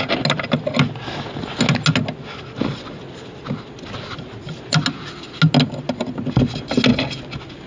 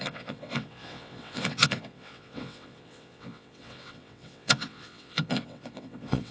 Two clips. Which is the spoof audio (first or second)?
second